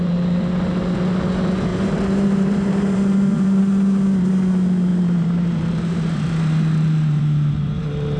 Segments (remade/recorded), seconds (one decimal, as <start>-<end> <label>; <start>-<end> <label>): 0.0-1.7 recorded; 1.7-3.6 remade; 3.6-4.9 recorded; 4.9-7.2 remade; 7.2-8.2 recorded